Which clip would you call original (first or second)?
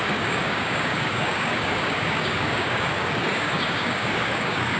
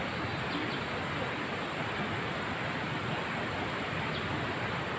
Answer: second